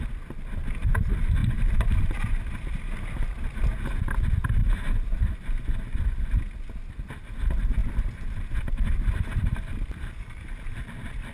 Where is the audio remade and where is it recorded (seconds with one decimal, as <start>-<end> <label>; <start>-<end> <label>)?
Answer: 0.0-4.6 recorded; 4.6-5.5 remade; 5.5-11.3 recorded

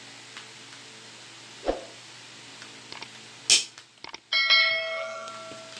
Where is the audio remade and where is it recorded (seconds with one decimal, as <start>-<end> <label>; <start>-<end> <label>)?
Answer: 0.0-4.6 recorded; 4.6-5.3 remade; 5.3-5.8 recorded

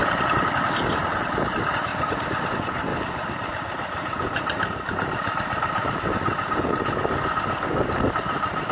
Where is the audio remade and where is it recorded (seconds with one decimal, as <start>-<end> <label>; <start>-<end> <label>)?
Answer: 0.0-1.9 recorded; 1.9-2.5 remade; 2.5-2.9 recorded; 2.9-6.7 remade; 6.7-8.7 recorded

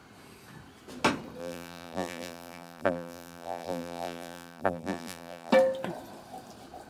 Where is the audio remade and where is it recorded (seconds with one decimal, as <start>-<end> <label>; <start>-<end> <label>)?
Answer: 0.0-1.4 recorded; 1.4-5.5 remade; 5.5-6.9 recorded

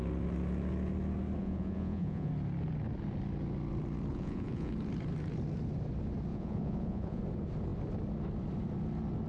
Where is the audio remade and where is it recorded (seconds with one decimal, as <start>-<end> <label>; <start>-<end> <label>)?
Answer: 0.0-1.4 recorded; 1.4-2.3 remade; 2.3-4.1 recorded; 4.1-4.7 remade; 4.7-6.3 recorded; 6.3-7.2 remade; 7.2-9.3 recorded

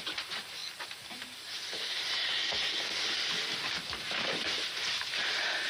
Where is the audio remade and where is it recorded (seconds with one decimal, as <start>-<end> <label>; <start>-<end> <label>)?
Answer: 0.0-0.6 remade; 0.6-4.0 recorded; 4.0-5.7 remade